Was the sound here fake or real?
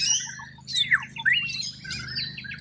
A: real